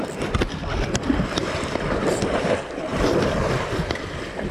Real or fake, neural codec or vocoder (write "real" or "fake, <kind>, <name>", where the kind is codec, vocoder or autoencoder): fake, vocoder, BigVGAN v2